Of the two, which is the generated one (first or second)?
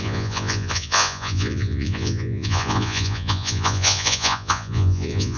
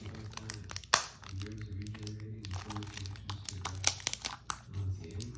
first